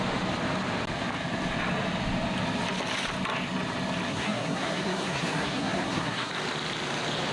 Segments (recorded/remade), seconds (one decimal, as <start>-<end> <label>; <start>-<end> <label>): 0.0-4.1 recorded; 4.1-6.3 remade; 6.3-7.3 recorded